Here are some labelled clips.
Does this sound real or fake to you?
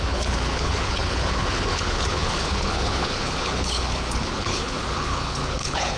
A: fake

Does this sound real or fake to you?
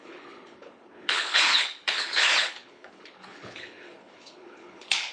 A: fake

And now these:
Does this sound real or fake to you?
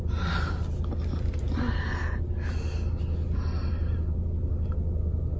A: real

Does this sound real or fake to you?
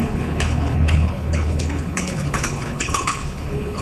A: fake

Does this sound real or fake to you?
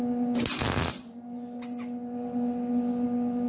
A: real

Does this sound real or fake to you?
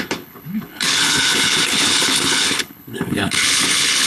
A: fake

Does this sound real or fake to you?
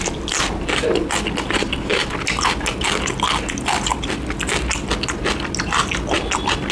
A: real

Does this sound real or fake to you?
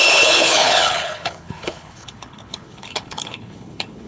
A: fake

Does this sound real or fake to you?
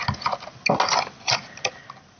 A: real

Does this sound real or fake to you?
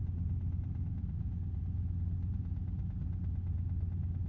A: real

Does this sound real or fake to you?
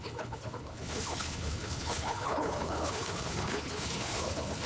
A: fake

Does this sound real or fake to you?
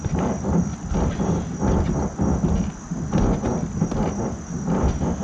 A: real